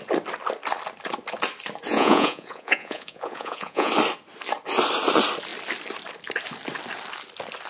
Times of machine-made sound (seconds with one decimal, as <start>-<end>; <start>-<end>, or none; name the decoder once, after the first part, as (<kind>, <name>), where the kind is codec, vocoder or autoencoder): 1.9-3.9 (vocoder, Vocos)